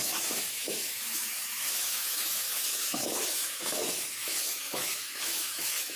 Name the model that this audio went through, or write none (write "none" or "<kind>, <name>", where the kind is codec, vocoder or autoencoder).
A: autoencoder, DAC-VAE